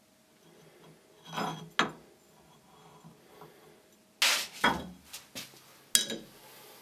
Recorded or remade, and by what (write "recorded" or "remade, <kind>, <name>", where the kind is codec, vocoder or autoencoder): recorded